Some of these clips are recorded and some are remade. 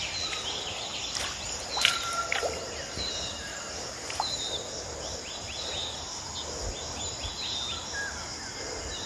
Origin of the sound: recorded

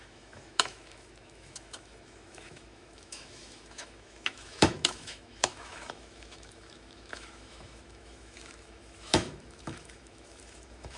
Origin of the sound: remade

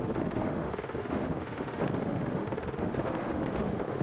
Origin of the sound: remade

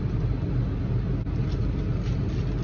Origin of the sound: recorded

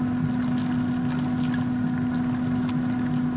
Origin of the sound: recorded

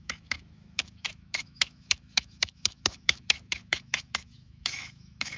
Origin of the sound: remade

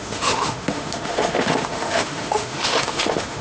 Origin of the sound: remade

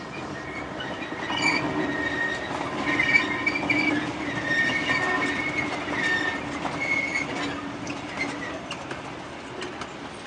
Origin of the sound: recorded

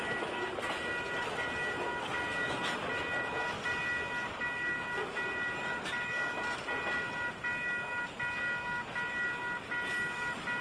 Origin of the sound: recorded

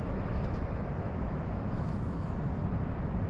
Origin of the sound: remade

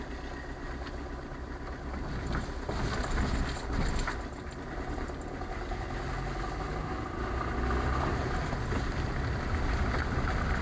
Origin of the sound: recorded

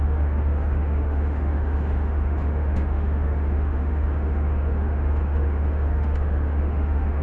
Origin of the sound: remade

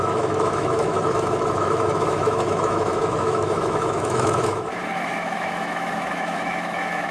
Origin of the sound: remade